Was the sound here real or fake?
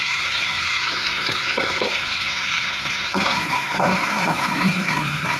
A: fake